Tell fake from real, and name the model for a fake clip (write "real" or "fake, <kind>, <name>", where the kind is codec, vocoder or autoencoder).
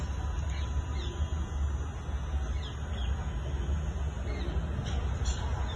real